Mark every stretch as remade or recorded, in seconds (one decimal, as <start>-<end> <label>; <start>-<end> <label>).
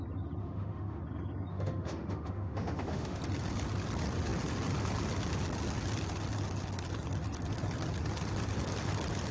0.0-0.4 recorded; 0.4-1.0 remade; 1.0-1.5 recorded; 1.5-3.2 remade; 3.2-9.3 recorded